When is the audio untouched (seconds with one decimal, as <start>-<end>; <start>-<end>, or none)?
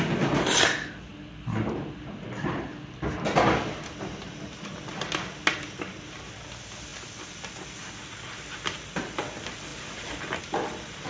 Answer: 0.0-11.1